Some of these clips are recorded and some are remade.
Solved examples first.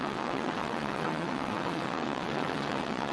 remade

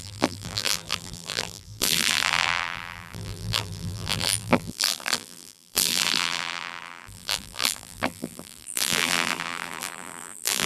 remade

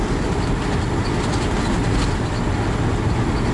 recorded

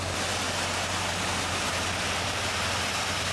recorded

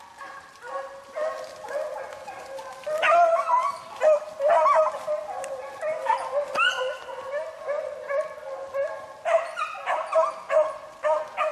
recorded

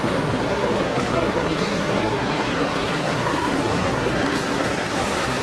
remade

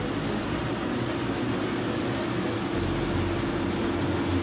recorded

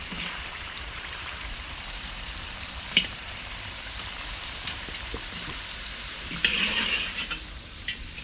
remade